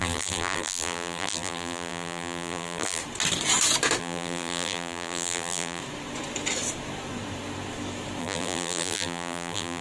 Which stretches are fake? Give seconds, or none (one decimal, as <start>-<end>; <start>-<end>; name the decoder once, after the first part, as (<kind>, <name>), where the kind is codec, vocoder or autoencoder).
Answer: 0.0-3.0 (vocoder, BigVGAN v2); 4.0-5.8; 8.2-9.8